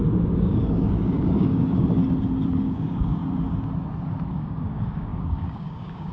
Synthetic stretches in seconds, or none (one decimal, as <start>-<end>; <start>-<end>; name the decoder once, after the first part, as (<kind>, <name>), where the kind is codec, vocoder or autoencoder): 0.0-2.0 (codec, DAC); 2.5-3.2; 4.3-6.1